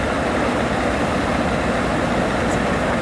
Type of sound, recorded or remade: recorded